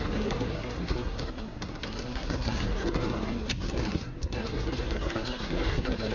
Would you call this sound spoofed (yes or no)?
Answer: yes